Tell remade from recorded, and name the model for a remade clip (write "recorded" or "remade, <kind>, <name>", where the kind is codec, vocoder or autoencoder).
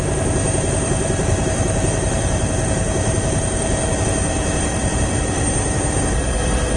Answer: remade, vocoder, BigVGAN v2